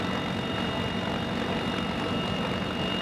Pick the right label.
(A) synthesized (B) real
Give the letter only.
B